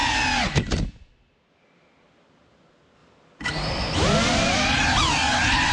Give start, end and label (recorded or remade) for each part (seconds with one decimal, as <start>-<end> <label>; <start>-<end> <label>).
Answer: 0.0-5.7 recorded